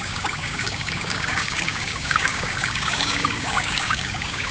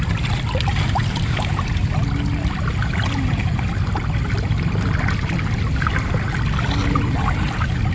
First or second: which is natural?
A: second